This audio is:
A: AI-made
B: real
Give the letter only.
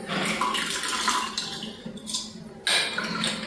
B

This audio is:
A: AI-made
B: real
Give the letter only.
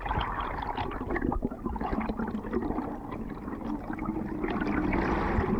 B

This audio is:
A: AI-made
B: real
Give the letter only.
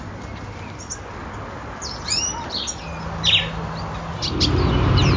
B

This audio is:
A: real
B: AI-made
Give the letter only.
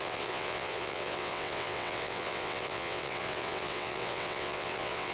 B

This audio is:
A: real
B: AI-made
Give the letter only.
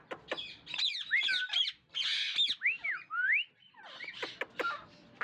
A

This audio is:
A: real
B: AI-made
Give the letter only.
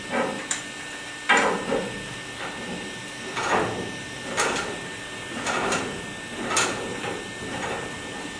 A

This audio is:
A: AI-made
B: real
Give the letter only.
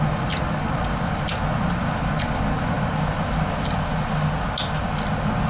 B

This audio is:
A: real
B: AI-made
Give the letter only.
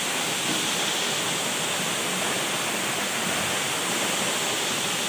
A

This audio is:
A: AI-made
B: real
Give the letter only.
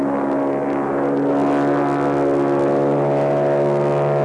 B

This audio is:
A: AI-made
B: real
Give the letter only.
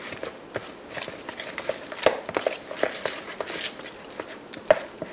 B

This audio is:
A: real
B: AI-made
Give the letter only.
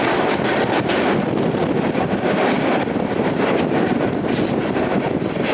A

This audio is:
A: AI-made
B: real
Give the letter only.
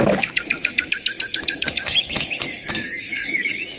A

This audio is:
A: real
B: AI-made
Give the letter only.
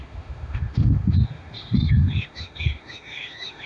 B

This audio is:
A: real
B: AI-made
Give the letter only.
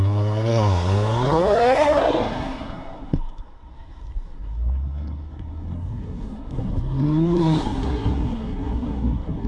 B